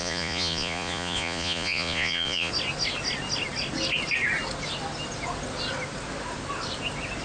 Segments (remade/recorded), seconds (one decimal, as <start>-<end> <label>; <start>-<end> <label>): 0.0-2.5 remade; 2.5-7.2 recorded